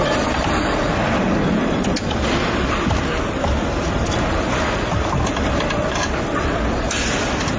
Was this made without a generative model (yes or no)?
no